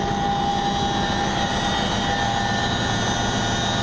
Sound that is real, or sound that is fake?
real